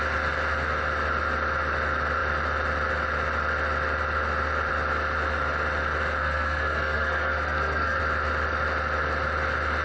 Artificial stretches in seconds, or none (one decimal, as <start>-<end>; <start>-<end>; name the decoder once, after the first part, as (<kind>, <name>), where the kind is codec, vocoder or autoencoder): 6.2-8.0 (codec, SNAC)